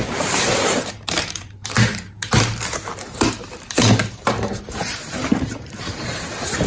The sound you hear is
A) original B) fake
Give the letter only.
B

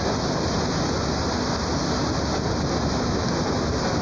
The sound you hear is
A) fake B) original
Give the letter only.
B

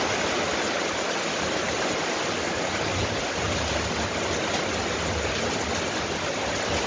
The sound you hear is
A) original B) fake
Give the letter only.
A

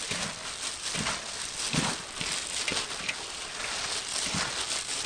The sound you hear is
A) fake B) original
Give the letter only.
B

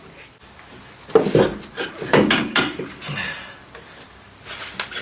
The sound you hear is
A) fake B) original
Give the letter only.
B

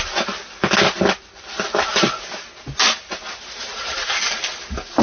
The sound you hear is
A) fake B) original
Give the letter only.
B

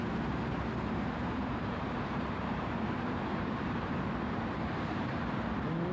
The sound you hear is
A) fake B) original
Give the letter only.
A